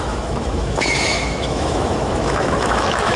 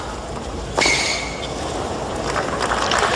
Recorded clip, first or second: second